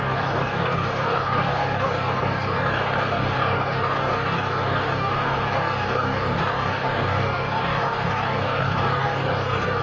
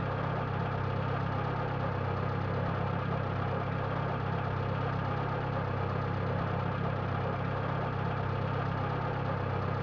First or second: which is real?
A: second